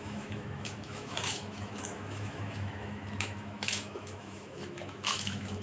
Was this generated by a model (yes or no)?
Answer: yes